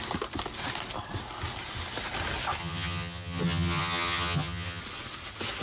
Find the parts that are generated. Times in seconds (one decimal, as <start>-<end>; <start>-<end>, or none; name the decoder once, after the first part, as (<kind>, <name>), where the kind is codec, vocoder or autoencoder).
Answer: 2.6-4.8 (vocoder, HiFi-GAN)